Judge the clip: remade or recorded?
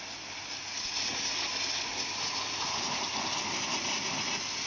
recorded